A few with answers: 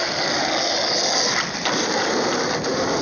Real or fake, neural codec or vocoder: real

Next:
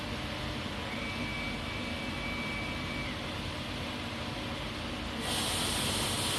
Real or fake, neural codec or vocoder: real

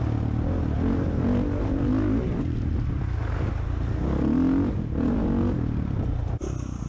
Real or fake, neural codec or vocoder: real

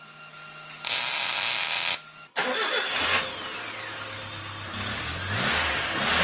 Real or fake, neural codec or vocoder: real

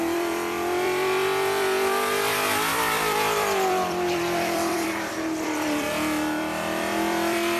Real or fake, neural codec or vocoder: fake, vocoder, BigVGAN v2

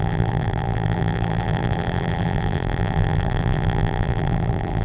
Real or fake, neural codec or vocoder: fake, vocoder, BigVGAN v2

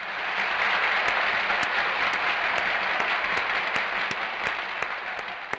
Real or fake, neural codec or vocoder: real